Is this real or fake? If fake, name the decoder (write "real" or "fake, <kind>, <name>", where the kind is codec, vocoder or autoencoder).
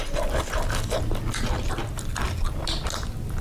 real